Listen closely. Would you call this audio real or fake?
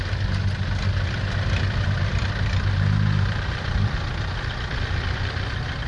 real